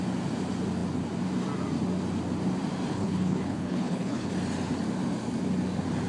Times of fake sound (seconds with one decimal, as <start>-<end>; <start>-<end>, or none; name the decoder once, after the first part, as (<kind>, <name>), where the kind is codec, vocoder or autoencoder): 2.9-4.3 (codec, HILCodec)